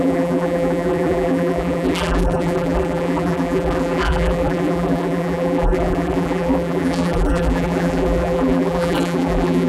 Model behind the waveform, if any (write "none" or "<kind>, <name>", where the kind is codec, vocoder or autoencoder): vocoder, BigVGAN v2